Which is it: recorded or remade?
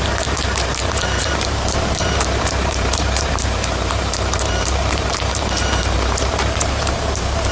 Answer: remade